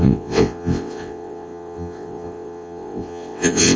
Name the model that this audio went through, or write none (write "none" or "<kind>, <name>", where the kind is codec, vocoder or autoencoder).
vocoder, WaveNeXt